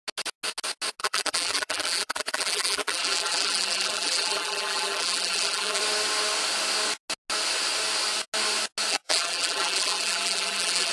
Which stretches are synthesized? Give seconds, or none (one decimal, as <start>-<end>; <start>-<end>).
1.0-5.8; 8.9-10.9